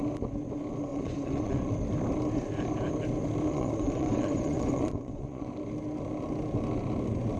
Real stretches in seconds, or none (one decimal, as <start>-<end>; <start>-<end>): 0.0-0.9; 1.7-3.5; 5.5-7.4